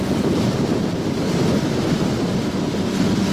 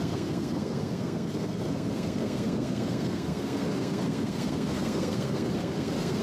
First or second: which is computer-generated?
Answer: second